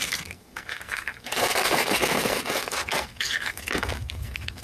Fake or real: fake